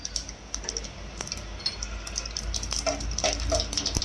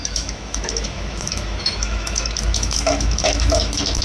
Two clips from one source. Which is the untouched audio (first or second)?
first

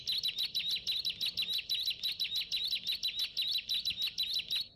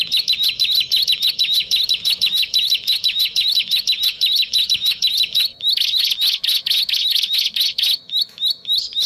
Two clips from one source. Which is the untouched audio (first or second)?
first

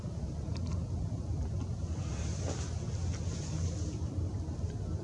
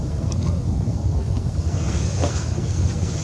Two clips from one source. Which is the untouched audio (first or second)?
first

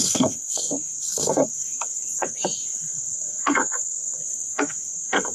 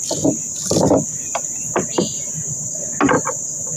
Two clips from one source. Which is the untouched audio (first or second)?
second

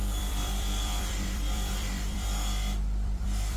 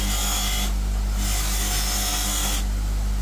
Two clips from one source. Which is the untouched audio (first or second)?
second